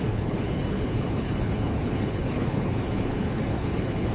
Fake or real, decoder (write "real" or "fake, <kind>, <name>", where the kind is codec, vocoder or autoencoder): fake, codec, HILCodec